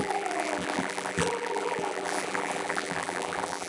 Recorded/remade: remade